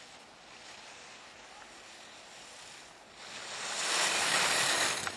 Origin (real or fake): real